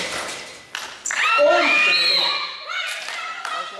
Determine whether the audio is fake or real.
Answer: real